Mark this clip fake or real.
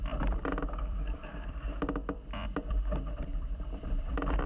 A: fake